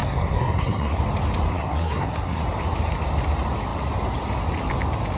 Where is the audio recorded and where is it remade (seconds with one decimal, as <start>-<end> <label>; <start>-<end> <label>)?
0.0-1.0 remade; 1.0-1.5 recorded; 1.5-2.4 remade; 2.4-5.2 recorded